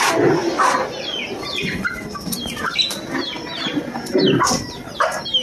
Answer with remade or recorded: recorded